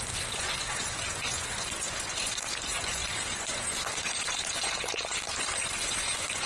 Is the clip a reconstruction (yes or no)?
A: yes